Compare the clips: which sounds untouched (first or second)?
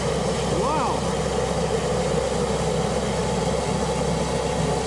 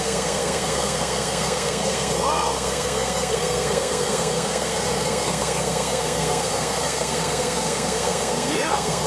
first